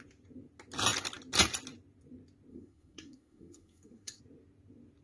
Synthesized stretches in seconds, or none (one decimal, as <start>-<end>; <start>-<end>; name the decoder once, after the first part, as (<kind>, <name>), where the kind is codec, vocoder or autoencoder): 2.5-4.2 (codec, SNAC)